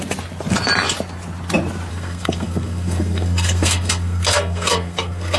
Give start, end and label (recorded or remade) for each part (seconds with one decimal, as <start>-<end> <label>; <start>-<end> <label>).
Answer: 0.0-1.9 recorded; 1.9-5.4 remade